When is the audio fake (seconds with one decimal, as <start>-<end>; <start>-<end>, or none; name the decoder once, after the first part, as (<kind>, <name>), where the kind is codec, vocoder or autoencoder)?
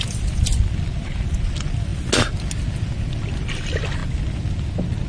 none